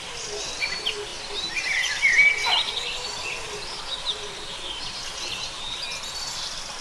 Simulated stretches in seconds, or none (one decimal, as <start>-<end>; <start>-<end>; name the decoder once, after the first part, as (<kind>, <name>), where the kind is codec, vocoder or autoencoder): none